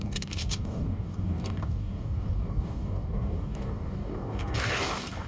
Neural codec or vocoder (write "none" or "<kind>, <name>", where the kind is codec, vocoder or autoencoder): codec, DAC